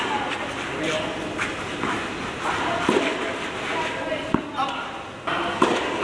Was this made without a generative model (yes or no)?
yes